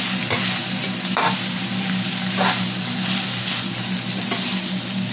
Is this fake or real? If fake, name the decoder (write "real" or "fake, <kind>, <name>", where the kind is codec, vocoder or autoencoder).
real